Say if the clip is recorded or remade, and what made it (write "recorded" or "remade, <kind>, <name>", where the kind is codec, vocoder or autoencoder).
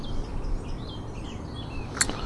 recorded